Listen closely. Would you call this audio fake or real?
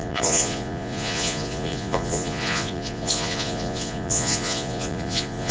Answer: fake